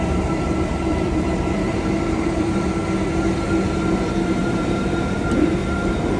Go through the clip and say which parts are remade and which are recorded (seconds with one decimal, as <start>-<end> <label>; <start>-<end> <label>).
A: 0.0-2.8 remade; 2.8-4.1 recorded; 4.1-5.6 remade; 5.6-6.2 recorded